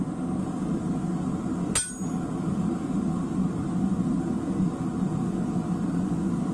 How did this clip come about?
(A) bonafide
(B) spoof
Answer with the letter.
A